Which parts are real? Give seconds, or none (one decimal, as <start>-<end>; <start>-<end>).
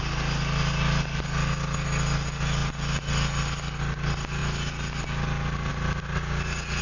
0.0-6.8